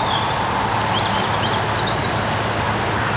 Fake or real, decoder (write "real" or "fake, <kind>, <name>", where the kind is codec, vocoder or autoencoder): real